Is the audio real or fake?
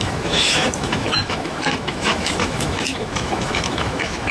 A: fake